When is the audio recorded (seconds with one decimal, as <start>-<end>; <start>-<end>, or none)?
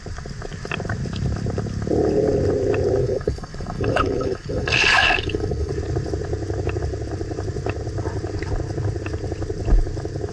0.0-3.0; 5.7-10.3